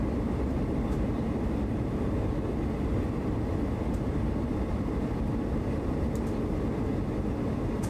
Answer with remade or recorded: recorded